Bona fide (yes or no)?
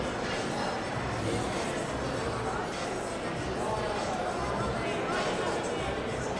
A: yes